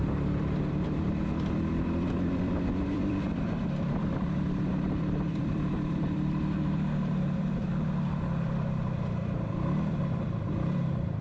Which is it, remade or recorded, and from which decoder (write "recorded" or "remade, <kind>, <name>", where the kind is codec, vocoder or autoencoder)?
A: remade, vocoder, BigVGAN v2